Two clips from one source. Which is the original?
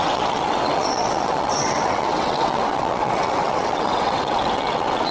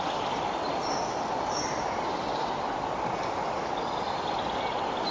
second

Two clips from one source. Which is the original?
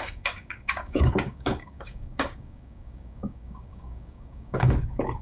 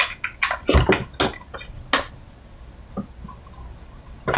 second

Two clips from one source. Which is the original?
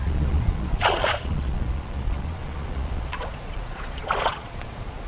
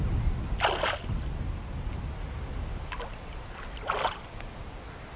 second